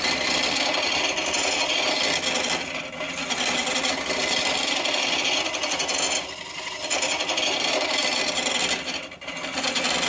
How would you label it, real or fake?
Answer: real